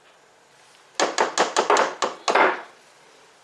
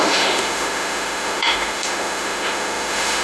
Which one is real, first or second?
first